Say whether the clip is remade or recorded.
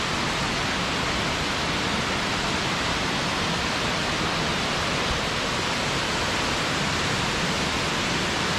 recorded